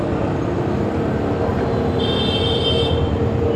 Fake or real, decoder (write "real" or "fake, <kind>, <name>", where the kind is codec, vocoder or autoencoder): real